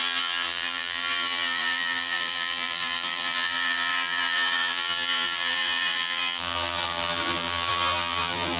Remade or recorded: remade